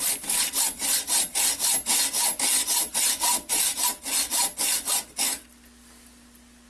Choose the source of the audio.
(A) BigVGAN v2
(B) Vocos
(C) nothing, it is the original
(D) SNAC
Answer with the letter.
C